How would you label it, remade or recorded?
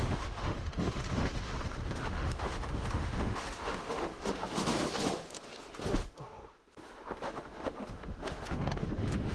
remade